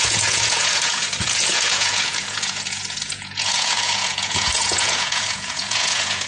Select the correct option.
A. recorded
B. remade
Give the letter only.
B